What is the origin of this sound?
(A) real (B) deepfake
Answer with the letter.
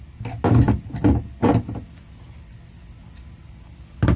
A